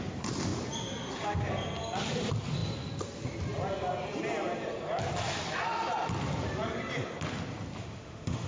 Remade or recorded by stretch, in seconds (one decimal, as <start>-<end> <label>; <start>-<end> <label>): 0.0-7.8 recorded; 7.8-8.5 remade